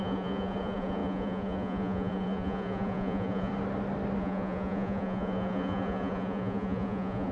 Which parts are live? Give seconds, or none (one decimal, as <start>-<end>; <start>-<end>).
3.5-4.2